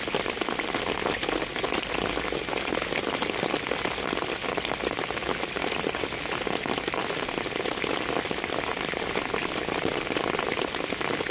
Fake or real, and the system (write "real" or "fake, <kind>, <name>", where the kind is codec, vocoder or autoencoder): real